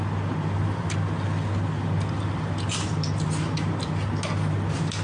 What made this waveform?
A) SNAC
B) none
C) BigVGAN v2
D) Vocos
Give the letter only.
B